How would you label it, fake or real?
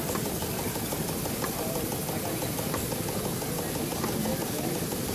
real